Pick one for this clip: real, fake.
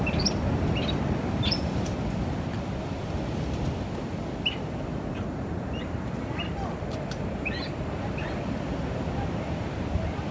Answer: fake